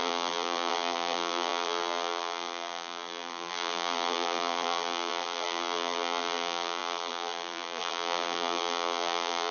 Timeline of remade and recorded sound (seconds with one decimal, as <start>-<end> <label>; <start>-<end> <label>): 0.0-9.5 remade